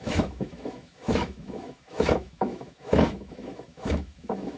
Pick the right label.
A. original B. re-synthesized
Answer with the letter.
B